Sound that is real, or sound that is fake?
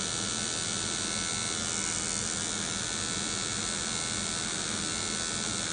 real